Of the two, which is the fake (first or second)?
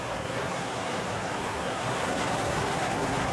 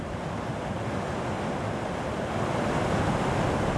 first